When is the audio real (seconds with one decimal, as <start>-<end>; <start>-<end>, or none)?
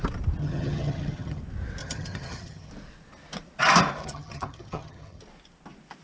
0.0-0.4; 1.4-1.8; 2.7-4.0; 5.2-6.0